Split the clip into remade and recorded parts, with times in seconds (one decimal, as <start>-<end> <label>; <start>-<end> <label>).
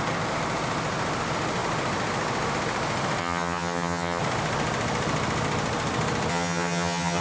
0.0-3.2 recorded; 3.2-4.2 remade; 4.2-6.3 recorded; 6.3-7.2 remade